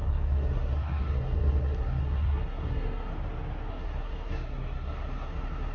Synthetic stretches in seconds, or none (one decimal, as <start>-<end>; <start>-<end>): 0.0-3.1; 3.7-5.7